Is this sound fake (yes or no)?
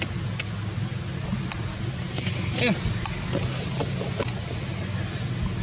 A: no